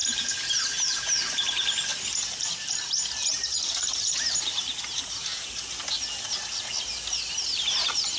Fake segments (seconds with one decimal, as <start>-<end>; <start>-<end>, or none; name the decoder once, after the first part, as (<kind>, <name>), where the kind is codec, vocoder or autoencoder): none